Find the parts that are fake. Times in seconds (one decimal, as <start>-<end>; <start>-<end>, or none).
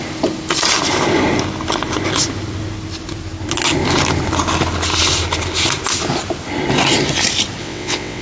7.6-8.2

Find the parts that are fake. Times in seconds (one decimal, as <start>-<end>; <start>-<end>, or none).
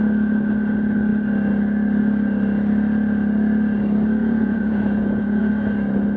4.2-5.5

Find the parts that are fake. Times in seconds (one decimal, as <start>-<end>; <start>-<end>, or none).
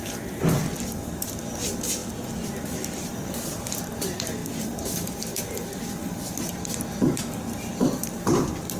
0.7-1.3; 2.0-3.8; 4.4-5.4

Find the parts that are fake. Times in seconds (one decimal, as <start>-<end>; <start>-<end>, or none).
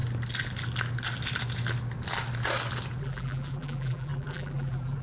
3.0-5.0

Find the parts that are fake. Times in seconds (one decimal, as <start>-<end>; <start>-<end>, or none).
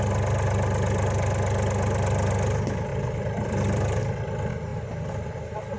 2.9-4.0